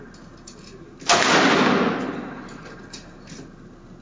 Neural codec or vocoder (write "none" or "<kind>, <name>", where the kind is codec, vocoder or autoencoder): none